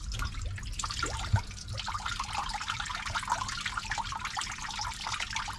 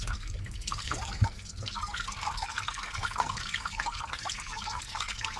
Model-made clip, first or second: second